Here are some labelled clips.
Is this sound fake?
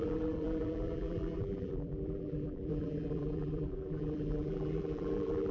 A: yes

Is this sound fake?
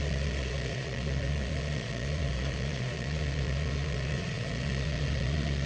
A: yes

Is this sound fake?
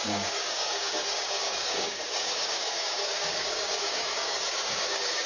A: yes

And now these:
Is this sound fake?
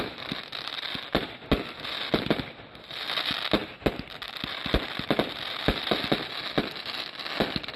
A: no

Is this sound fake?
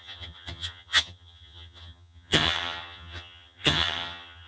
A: yes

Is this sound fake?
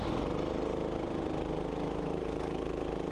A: no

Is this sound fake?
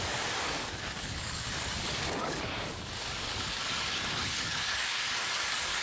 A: yes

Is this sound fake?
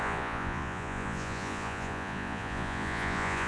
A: yes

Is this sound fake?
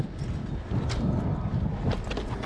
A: no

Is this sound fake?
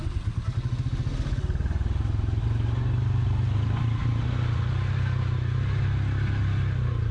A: no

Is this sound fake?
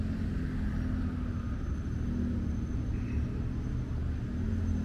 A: no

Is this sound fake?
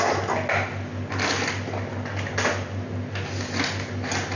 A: no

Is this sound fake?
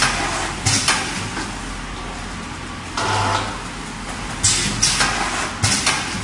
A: no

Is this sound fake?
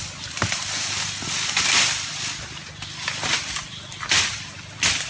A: no